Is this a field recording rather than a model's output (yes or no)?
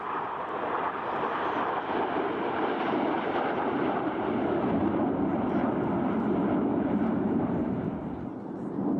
no